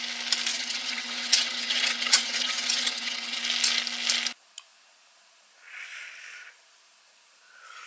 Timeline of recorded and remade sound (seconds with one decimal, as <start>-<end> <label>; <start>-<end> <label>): 0.0-0.5 recorded; 0.5-3.4 remade; 3.4-7.9 recorded